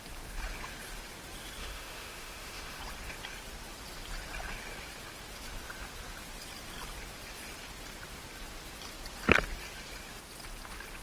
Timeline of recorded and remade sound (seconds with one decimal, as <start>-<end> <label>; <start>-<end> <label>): 0.0-1.6 recorded; 1.6-2.8 remade; 2.8-11.0 recorded